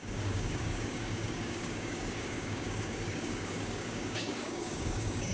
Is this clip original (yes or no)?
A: no